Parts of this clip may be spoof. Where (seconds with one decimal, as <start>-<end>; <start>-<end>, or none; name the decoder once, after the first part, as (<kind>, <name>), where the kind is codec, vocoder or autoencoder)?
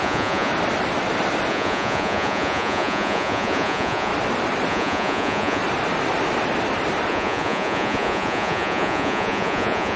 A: 0.0-0.5 (vocoder, Vocos); 1.5-4.1; 4.7-5.6; 7.1-10.0